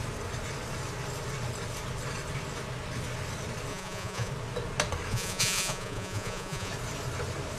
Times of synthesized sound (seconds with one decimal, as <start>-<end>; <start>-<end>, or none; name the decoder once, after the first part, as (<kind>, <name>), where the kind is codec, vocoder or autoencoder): 3.7-4.3 (vocoder, Vocos); 5.1-6.7